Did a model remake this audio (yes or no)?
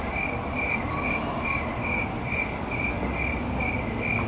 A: no